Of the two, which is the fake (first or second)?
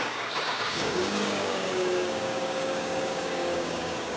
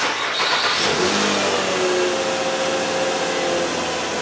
first